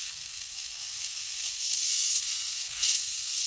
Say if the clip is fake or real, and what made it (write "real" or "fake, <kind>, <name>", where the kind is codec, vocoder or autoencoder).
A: fake, codec, SNAC